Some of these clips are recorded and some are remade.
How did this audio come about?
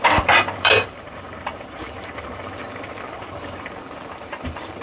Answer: remade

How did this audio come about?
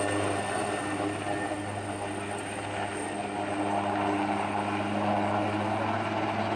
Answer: recorded